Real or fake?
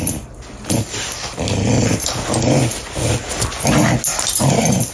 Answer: real